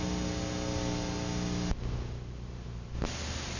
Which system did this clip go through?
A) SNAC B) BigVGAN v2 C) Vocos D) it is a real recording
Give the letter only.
D